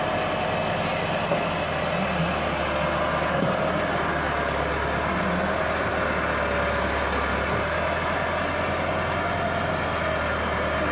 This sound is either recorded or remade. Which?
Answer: recorded